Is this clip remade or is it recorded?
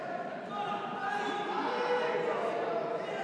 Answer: recorded